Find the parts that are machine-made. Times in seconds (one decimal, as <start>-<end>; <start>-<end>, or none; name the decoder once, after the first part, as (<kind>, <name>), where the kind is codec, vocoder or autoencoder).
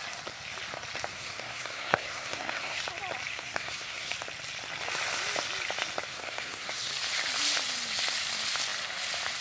1.1-2.8 (codec, SNAC); 3.3-4.1; 6.1-6.9